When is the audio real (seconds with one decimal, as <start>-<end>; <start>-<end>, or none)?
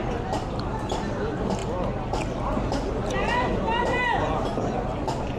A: 0.0-1.6; 3.8-5.4